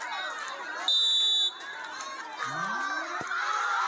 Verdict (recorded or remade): recorded